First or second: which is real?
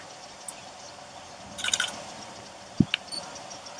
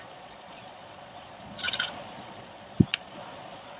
first